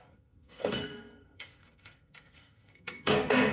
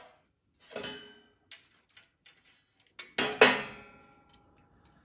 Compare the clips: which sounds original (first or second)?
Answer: second